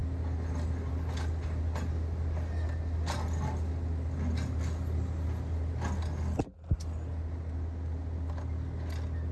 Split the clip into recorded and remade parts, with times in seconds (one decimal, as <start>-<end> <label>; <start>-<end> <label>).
0.0-9.3 recorded